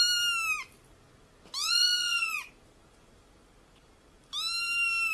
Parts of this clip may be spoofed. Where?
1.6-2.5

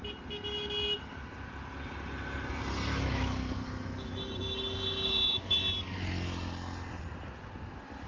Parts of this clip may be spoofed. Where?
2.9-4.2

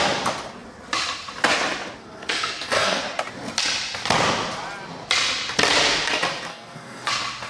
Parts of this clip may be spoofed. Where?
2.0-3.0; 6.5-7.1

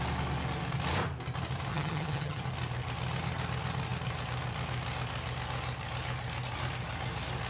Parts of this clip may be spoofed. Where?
1.7-2.4

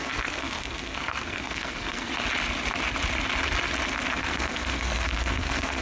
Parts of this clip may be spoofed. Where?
0.0-2.1; 4.2-5.8

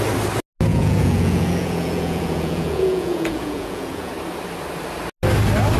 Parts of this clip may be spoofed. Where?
0.7-4.1

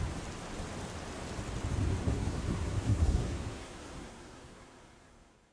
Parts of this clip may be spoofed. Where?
2.0-5.5

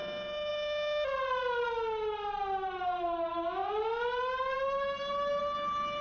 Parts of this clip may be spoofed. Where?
none